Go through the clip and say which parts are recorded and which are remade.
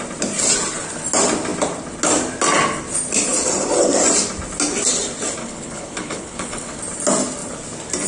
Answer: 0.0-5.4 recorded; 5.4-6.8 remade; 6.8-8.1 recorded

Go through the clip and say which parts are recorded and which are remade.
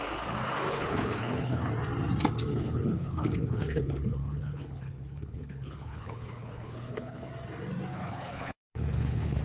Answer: 0.0-0.7 recorded; 0.7-1.7 remade; 1.7-2.5 recorded; 2.5-7.3 remade; 7.3-7.9 recorded; 7.9-9.4 remade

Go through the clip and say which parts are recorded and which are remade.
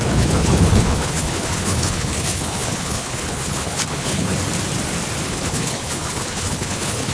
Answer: 0.0-4.3 remade; 4.3-5.3 recorded; 5.3-7.1 remade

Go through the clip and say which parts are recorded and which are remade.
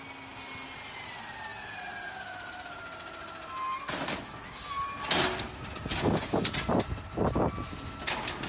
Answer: 0.0-8.5 recorded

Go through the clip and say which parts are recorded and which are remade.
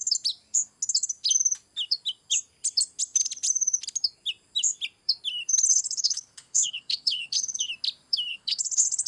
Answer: 0.0-5.7 recorded; 5.7-7.7 remade; 7.7-8.3 recorded; 8.3-9.1 remade